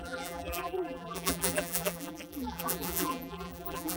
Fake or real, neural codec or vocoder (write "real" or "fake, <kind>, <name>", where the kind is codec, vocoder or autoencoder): fake, vocoder, BigVGAN v2